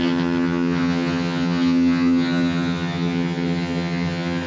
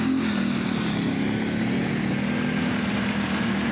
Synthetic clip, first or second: first